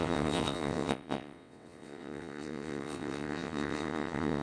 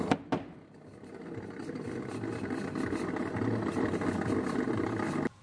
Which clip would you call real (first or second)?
second